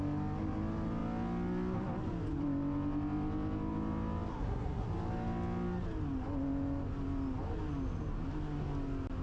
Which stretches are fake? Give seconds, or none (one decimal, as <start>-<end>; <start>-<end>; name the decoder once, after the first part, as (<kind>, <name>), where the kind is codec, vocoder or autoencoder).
4.3-4.9 (codec, SNAC)